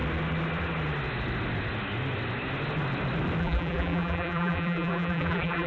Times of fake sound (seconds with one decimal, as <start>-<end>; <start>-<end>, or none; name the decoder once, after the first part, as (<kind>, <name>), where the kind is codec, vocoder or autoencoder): 3.4-5.7 (vocoder, BigVGAN v2)